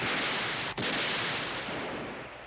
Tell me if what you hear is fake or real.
real